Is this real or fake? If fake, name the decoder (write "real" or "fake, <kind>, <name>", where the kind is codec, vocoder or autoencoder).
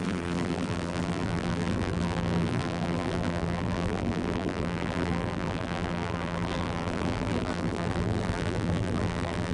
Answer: fake, vocoder, BigVGAN v2